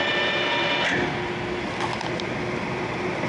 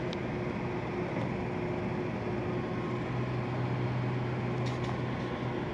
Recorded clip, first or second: second